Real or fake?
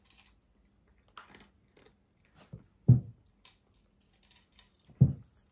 real